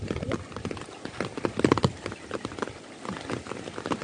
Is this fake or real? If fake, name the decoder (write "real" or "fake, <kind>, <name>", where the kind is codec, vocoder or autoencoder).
real